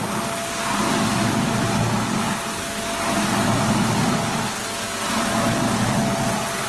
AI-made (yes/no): no